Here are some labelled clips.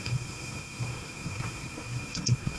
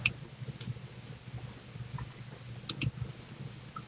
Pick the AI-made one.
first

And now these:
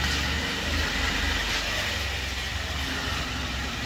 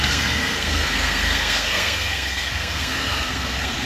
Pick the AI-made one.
second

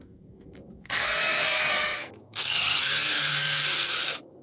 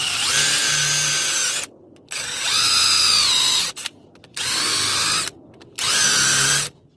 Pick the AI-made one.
first